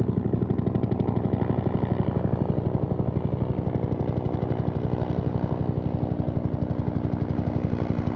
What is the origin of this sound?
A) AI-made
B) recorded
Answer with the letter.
B